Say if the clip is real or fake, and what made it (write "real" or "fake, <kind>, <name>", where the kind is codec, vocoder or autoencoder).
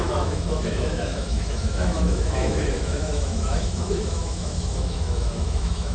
fake, autoencoder, DAC-VAE